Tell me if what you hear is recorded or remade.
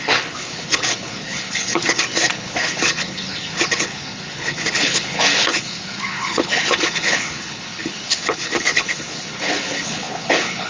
remade